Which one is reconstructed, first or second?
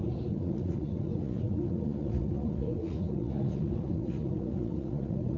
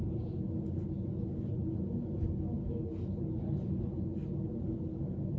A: first